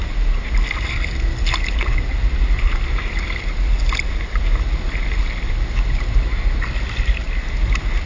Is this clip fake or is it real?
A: real